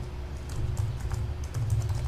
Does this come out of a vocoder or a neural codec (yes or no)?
no